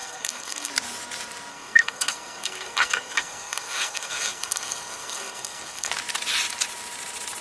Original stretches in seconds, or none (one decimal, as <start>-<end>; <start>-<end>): 0.7-1.5; 5.9-7.4